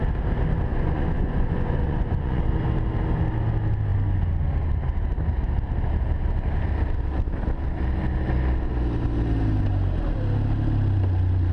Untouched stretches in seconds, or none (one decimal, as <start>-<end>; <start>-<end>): 0.0-0.7; 2.5-11.5

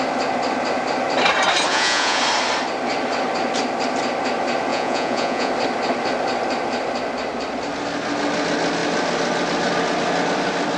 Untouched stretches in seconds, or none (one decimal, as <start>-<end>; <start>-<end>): 0.0-1.7; 2.2-4.7; 5.5-10.8

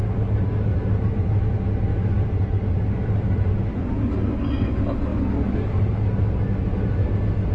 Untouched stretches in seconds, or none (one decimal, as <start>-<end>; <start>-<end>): 0.0-0.7; 1.5-1.9; 3.5-7.5

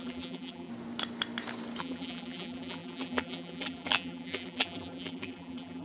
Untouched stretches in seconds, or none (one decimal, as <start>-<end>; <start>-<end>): 0.7-1.8

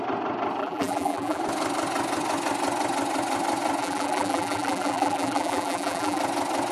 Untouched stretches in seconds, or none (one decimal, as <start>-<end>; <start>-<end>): 0.0-0.6; 1.4-3.8; 6.2-6.7

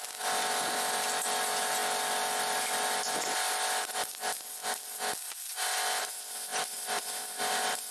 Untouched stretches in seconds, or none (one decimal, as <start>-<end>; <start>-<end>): 0.0-6.5; 7.5-7.9

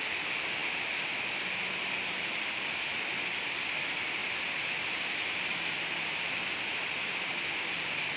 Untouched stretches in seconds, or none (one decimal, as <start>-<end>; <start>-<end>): 0.0-8.2